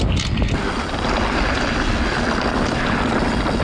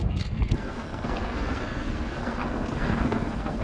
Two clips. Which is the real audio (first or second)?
first